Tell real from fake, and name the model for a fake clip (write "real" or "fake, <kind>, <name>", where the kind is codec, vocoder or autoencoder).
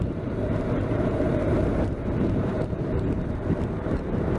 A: fake, vocoder, BigVGAN v2